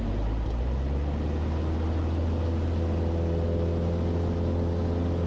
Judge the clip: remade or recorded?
recorded